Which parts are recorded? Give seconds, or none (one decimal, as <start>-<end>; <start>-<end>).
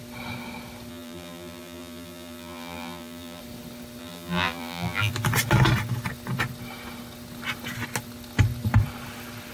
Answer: 0.0-0.9; 3.4-4.0; 5.1-9.5